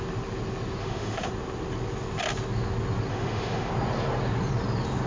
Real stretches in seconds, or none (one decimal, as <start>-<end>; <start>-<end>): 0.0-0.8; 1.3-3.1; 3.7-5.1